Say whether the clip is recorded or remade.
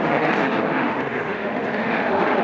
remade